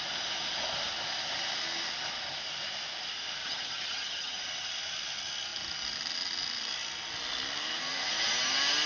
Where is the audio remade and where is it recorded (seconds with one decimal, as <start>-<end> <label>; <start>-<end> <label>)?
0.0-3.4 recorded; 3.4-4.4 remade; 4.4-8.9 recorded